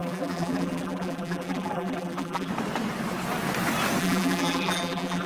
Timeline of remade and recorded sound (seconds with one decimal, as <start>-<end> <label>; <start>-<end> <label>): 0.0-2.5 remade; 2.5-4.0 recorded; 4.0-5.3 remade